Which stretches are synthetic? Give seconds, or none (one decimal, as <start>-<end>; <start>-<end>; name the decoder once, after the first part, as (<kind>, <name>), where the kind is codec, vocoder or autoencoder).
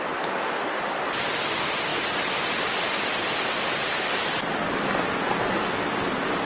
none